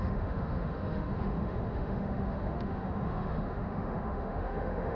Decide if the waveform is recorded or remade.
remade